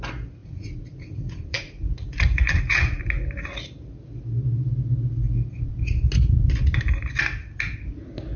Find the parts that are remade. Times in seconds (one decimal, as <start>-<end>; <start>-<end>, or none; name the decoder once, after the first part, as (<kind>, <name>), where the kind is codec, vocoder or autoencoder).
0.4-3.0 (vocoder, Vocos)